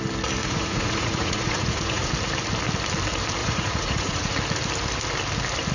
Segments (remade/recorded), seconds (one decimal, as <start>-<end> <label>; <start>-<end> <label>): 0.0-0.4 recorded; 0.4-2.1 remade; 2.1-3.4 recorded; 3.4-4.3 remade; 4.3-5.7 recorded